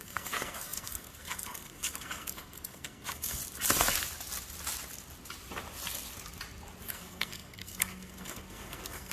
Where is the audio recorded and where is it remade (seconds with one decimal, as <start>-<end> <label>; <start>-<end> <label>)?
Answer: 0.0-3.4 remade; 3.4-6.9 recorded; 6.9-9.1 remade